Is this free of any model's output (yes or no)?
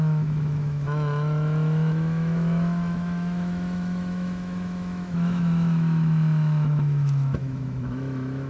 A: no